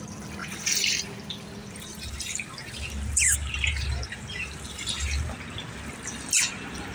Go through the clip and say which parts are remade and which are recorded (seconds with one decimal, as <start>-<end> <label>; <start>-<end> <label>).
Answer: 0.0-0.4 recorded; 0.4-1.0 remade; 1.0-1.6 recorded; 1.6-5.3 remade; 5.3-6.9 recorded